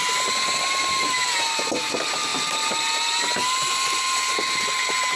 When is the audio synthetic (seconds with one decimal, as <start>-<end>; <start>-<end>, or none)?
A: none